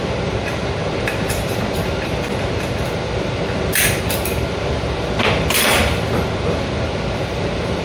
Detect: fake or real fake